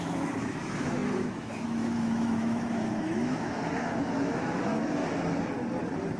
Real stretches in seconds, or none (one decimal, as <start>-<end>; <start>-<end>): 5.0-6.2